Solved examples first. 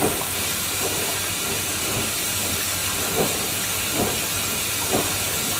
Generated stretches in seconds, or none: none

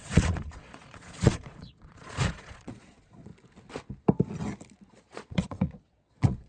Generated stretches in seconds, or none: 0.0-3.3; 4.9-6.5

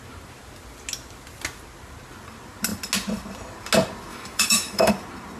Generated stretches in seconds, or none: 4.1-4.9

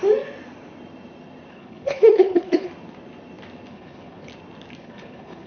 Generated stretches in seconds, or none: 1.5-2.7; 3.7-4.3; 4.8-5.5

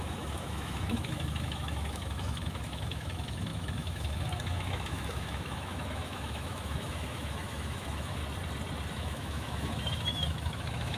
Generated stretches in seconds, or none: 0.0-8.2; 8.9-11.0

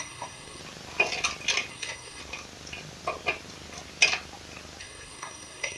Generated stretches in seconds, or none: 0.0-0.6; 1.7-2.2; 4.8-5.8